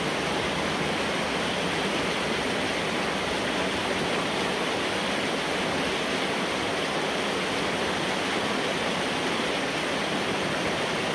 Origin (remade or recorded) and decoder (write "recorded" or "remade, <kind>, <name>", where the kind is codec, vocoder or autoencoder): recorded